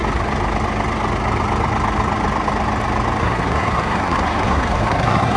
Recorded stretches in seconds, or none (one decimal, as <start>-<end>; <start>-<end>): 0.0-3.2